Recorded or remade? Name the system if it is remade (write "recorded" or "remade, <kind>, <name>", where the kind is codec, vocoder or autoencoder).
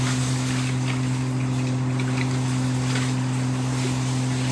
recorded